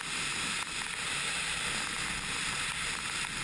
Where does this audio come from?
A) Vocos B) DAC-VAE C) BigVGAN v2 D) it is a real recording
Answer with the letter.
D